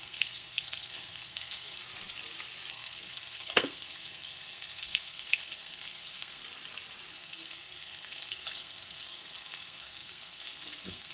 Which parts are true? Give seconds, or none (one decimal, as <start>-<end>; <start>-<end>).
1.8-2.7; 6.4-7.1